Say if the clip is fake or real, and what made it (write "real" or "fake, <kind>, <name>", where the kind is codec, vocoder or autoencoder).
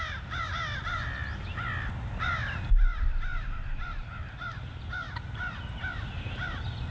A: real